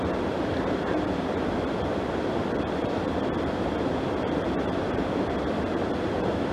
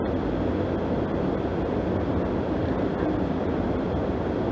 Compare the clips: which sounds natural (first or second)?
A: second